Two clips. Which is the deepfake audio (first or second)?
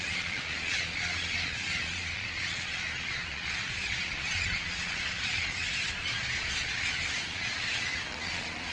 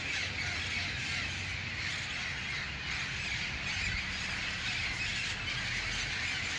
first